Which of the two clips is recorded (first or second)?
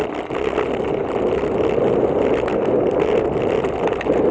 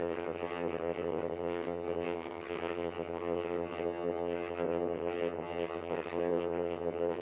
first